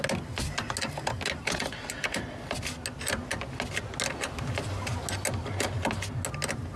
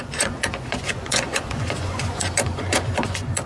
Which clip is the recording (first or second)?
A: first